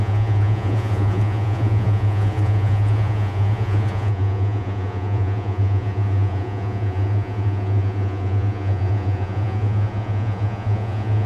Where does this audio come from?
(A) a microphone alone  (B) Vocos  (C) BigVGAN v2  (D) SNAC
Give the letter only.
B